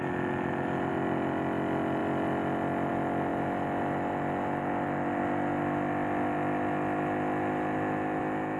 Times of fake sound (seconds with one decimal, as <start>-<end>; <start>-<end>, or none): none